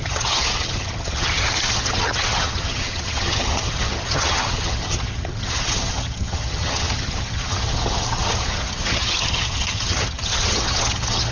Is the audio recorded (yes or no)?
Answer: no